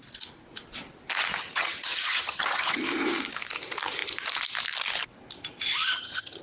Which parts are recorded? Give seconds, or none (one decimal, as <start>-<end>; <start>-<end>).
0.0-1.4; 2.8-5.8